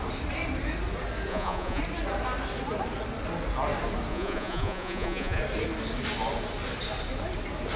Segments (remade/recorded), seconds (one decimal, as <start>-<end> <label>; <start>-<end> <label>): 0.0-1.3 recorded; 1.3-1.8 remade; 1.8-4.1 recorded; 4.1-5.4 remade; 5.4-7.8 recorded